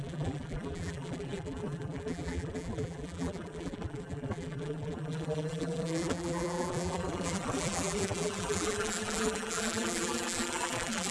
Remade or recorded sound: remade